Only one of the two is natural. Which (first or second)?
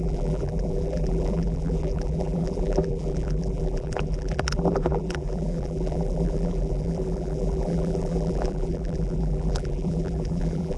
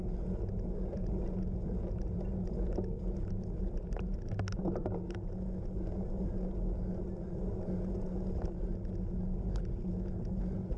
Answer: second